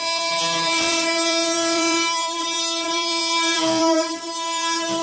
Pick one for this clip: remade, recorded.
remade